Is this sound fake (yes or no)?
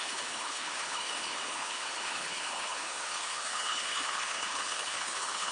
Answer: yes